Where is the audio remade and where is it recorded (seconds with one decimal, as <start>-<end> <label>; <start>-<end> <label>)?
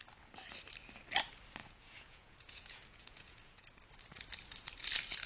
0.0-1.6 recorded; 1.6-3.8 remade; 3.8-5.3 recorded